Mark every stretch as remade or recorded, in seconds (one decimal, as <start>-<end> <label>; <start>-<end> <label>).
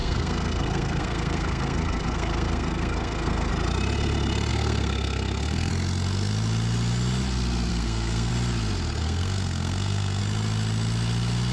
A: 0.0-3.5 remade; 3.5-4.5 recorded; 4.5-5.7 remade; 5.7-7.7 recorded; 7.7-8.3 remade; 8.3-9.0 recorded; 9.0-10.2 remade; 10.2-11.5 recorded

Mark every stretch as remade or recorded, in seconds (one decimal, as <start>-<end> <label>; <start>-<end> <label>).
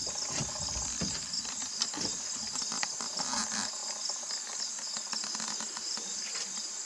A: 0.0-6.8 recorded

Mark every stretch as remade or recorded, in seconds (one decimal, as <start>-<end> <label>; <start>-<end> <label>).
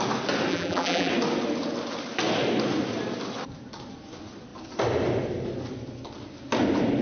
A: 0.0-0.5 recorded; 0.5-1.1 remade; 1.1-7.0 recorded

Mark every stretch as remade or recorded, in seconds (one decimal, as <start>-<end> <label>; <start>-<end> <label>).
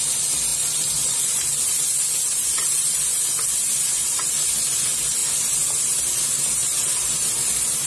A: 0.0-7.9 recorded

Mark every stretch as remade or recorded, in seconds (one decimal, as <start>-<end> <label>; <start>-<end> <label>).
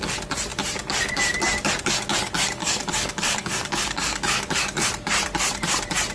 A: 0.0-2.6 recorded; 2.6-4.9 remade; 4.9-6.1 recorded